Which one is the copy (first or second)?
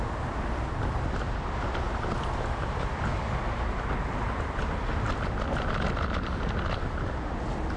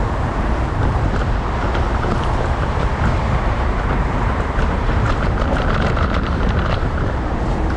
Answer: second